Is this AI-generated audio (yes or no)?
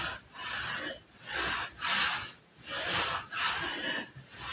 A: no